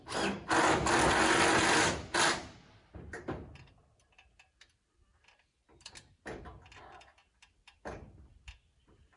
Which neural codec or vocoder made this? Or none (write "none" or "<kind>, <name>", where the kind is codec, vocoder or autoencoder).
none